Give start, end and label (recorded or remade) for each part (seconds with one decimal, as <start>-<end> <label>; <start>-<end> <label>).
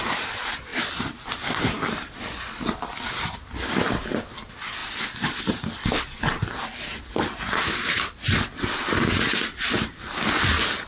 0.0-10.9 recorded